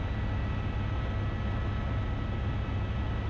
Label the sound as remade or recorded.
recorded